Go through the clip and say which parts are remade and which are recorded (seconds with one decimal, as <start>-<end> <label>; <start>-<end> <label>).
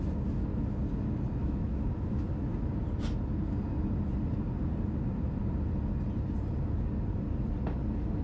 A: 0.0-1.4 recorded; 1.4-2.4 remade; 2.4-8.2 recorded